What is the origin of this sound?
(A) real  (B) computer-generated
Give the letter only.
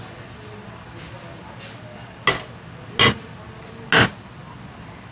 A